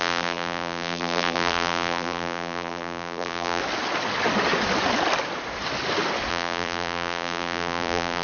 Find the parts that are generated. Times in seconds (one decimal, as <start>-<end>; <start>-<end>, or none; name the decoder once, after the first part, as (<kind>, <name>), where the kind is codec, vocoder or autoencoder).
0.0-3.6 (vocoder, BigVGAN v2); 6.3-8.2